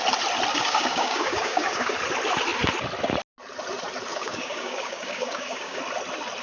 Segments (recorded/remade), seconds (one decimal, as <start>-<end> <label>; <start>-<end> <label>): 0.0-0.5 recorded; 0.5-1.9 remade; 1.9-4.1 recorded; 4.1-5.8 remade; 5.8-6.4 recorded